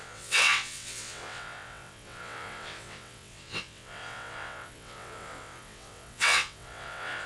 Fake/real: fake